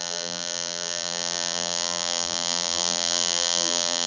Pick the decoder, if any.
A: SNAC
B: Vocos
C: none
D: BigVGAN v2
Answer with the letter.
D